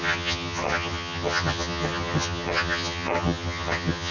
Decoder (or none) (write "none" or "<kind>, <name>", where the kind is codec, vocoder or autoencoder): vocoder, HiFi-GAN